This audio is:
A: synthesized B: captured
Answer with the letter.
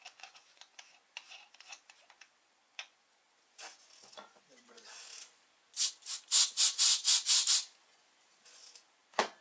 A